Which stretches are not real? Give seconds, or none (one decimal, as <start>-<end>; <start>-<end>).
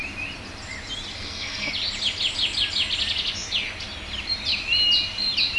1.1-1.7